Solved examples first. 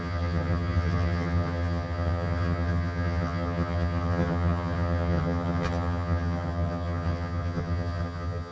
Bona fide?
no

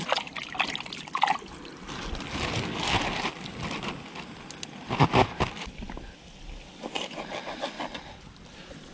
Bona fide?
yes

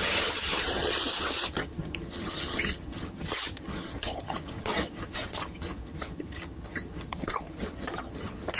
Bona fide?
no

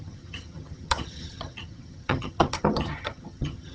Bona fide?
no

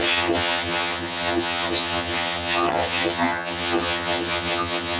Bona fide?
no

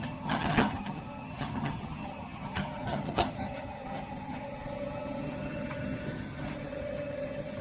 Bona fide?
no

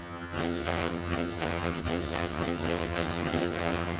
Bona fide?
no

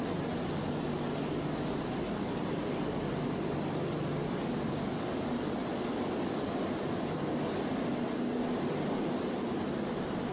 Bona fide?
yes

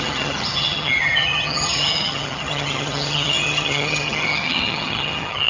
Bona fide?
no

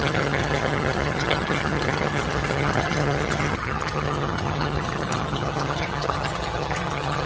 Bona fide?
no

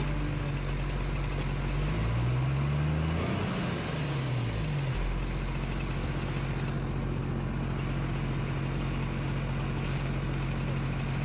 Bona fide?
yes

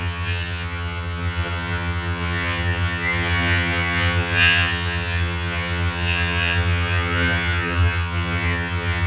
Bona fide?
no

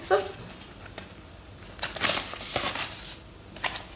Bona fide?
yes